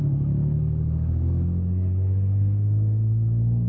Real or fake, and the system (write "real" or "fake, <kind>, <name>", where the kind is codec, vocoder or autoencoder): fake, codec, DAC